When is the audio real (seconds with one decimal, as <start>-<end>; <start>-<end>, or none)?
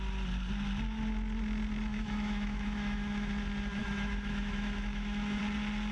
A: 0.0-1.9; 3.3-3.8; 5.4-5.9